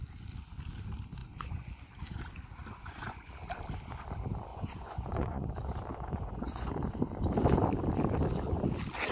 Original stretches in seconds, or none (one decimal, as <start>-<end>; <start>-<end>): 0.0-1.2; 1.7-2.8; 3.3-4.5; 5.5-5.9; 6.7-9.1